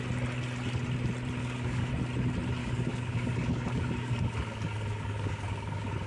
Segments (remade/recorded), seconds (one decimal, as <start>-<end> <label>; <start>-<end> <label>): 0.0-1.4 recorded; 1.4-1.9 remade; 1.9-2.6 recorded; 2.6-6.1 remade